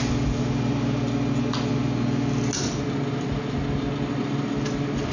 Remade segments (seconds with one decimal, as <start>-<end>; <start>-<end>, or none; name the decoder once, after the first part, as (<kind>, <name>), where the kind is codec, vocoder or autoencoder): none